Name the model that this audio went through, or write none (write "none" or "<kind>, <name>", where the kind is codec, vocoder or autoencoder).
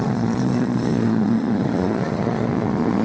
vocoder, Vocos